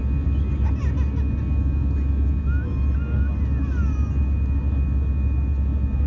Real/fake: real